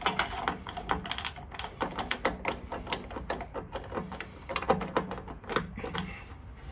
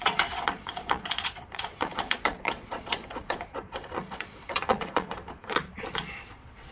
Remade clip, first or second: second